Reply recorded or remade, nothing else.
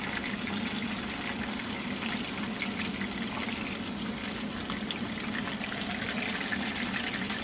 recorded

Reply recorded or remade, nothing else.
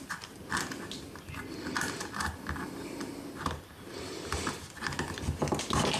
recorded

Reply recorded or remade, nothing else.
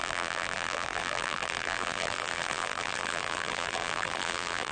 remade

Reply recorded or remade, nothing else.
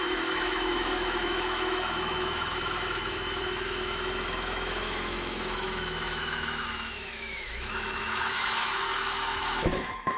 remade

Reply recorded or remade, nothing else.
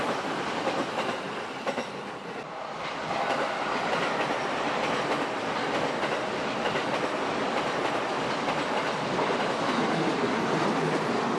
recorded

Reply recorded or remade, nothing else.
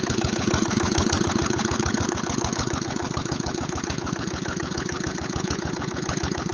remade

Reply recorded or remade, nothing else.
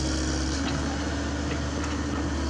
recorded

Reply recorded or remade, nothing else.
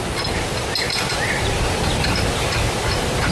recorded